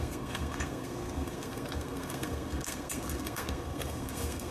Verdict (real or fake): fake